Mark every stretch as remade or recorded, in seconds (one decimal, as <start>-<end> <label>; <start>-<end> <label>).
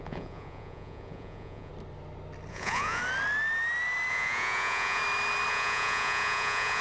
0.0-1.7 remade; 1.7-2.5 recorded; 2.5-3.0 remade; 3.0-4.1 recorded; 4.1-5.0 remade; 5.0-5.5 recorded; 5.5-6.8 remade